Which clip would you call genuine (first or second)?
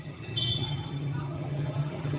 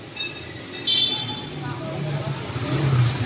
second